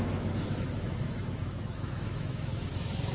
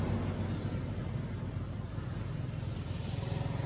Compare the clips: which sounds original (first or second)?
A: second